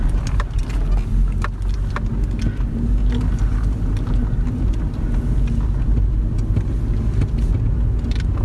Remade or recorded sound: recorded